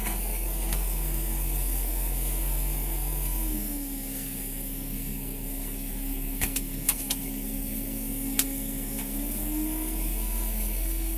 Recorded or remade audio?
remade